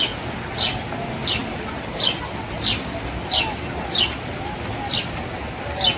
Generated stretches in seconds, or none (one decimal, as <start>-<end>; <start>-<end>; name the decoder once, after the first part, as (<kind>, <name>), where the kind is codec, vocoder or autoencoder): none